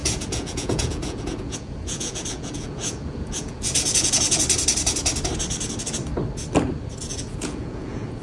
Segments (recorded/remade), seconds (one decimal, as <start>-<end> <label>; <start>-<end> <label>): 0.0-4.4 remade; 4.4-7.1 recorded; 7.1-8.2 remade